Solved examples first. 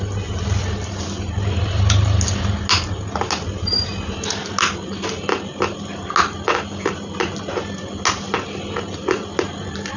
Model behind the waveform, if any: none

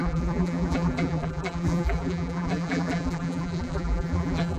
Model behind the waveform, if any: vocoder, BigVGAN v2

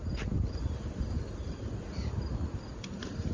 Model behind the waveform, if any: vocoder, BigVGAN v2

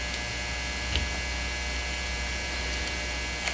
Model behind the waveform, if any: none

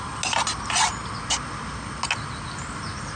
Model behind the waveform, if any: none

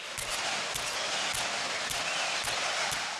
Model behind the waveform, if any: none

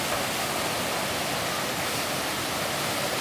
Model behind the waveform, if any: none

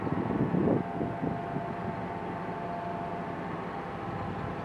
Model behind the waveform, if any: none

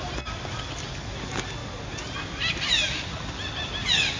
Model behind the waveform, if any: none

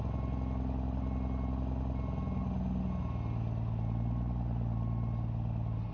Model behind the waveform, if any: none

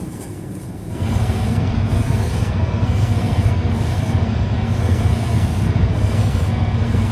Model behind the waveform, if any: codec, SNAC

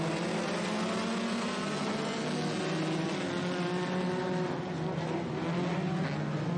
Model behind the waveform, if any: none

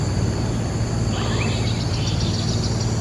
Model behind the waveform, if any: none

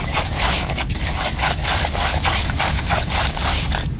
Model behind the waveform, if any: codec, DAC